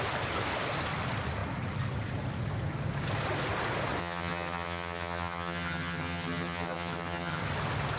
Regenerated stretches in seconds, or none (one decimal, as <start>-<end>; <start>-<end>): 4.0-7.4